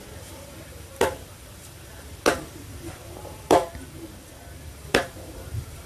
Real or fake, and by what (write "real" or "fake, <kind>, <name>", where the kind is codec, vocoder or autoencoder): fake, vocoder, BigVGAN v2